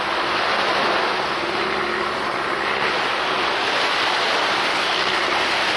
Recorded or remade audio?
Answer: recorded